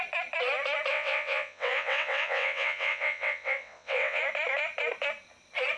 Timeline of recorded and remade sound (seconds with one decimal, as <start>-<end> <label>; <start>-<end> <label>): 0.0-0.9 recorded; 0.9-4.2 remade; 4.2-5.8 recorded

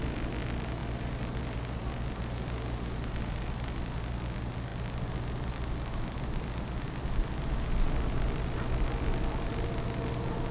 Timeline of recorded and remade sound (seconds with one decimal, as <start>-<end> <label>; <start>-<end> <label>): 0.0-10.5 recorded

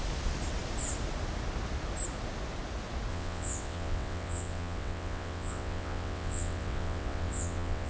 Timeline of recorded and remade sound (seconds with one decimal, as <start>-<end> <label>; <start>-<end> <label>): 0.0-3.1 recorded; 3.1-7.9 remade

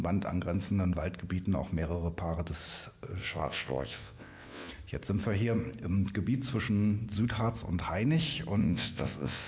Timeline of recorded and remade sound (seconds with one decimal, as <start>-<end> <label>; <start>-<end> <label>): 0.0-3.2 recorded; 3.2-4.7 remade; 4.7-8.6 recorded; 8.6-9.5 remade